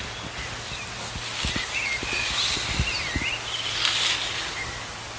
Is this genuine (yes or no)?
yes